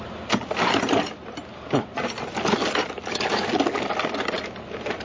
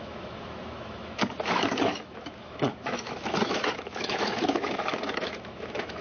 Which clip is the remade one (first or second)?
second